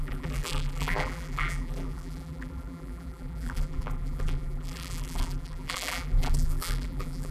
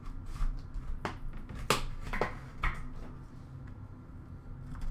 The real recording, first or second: second